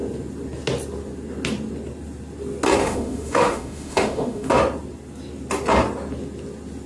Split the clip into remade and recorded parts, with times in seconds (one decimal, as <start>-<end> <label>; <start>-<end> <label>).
0.0-2.8 recorded; 2.8-4.5 remade; 4.5-6.9 recorded